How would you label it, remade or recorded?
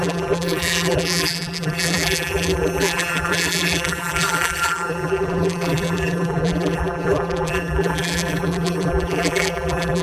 remade